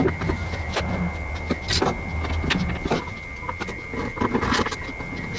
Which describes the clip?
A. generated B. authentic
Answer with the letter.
B